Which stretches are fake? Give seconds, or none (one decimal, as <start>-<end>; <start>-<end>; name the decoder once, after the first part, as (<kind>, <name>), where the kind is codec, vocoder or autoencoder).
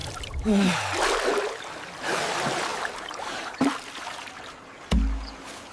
0.0-0.7 (vocoder, BigVGAN v2); 2.7-3.6